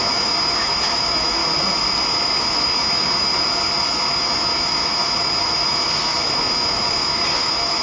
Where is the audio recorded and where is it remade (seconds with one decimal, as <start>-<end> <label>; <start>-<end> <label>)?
0.0-1.4 remade; 1.4-2.0 recorded; 2.0-3.3 remade; 3.3-3.8 recorded; 3.8-7.8 remade